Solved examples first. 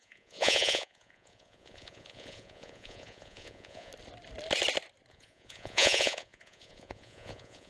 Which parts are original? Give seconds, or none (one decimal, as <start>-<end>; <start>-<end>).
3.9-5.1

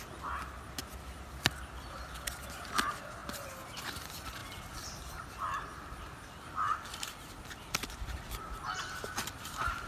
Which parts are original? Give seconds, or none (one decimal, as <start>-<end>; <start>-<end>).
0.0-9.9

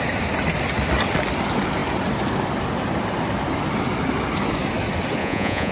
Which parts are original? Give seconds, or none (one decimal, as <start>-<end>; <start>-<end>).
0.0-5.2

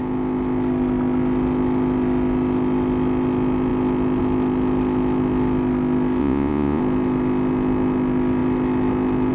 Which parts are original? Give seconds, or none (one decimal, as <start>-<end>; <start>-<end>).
0.0-6.2; 6.8-9.3

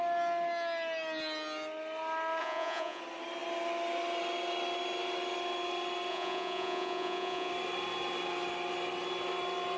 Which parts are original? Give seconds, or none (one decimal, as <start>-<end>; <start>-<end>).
0.0-2.4; 3.0-6.1; 7.5-9.8

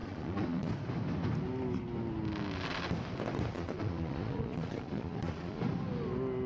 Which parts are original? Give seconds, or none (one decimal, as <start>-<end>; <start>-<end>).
0.7-3.5; 5.6-6.5